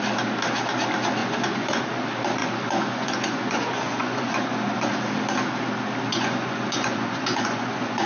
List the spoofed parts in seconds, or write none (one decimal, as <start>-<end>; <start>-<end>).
1.2-1.8; 2.4-4.9; 6.1-8.1